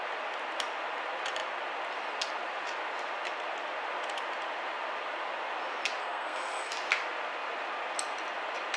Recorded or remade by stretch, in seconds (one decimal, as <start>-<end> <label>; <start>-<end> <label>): 0.0-6.0 recorded; 6.0-6.7 remade; 6.7-8.8 recorded